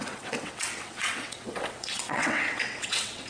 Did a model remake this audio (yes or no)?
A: yes